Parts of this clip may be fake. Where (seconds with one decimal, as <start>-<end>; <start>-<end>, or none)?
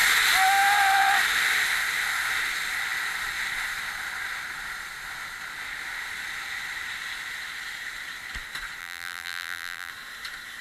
8.8-9.9